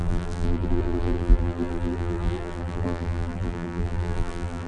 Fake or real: fake